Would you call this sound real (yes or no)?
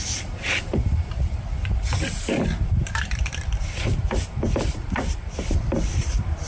no